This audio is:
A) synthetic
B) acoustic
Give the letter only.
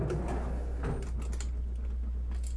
B